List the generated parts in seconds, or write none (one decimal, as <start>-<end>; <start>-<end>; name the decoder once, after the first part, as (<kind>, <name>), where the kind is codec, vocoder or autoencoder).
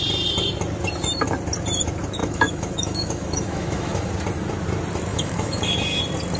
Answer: 2.2-4.1 (autoencoder, DAC-VAE); 5.1-6.0